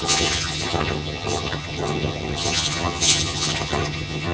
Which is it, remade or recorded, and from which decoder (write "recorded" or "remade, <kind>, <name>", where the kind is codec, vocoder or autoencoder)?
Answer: remade, vocoder, HiFi-GAN